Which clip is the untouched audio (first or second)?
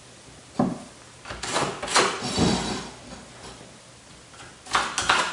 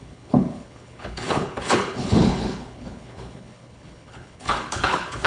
first